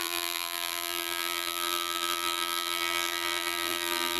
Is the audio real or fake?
fake